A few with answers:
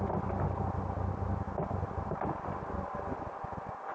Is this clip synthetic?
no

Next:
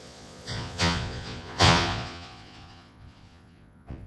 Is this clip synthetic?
yes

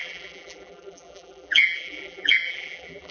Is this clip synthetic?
yes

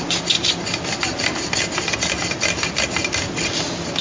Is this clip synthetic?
no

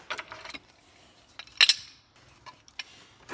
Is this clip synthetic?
no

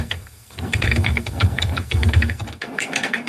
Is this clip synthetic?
yes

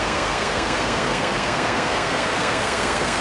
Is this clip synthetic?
yes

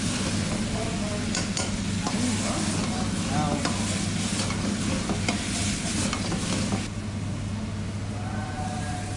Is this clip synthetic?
no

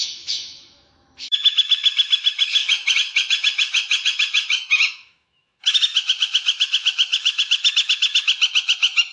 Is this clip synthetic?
yes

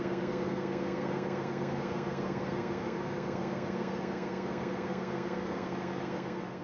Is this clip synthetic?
yes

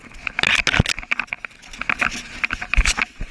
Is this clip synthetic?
no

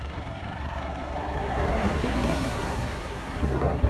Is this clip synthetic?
yes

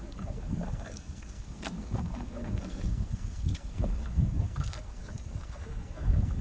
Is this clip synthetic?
yes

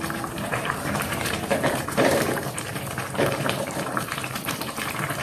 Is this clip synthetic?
yes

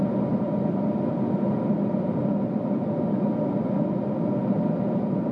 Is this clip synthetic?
no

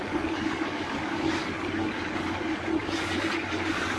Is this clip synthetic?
yes